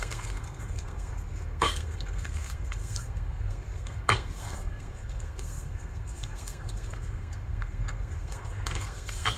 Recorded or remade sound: remade